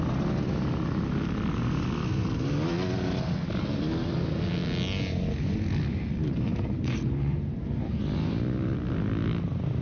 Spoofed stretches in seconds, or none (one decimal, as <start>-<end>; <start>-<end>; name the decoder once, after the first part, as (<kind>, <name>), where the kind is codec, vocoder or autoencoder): 6.5-8.0 (vocoder, BigVGAN v2)